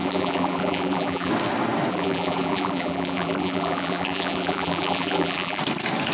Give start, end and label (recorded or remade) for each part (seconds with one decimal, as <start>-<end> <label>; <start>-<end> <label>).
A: 0.0-1.3 remade; 1.3-1.9 recorded; 1.9-5.6 remade; 5.6-6.1 recorded